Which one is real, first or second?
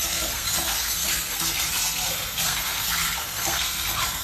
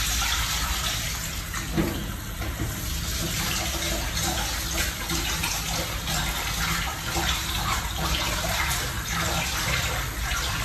second